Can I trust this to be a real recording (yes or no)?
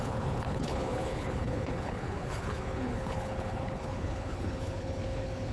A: no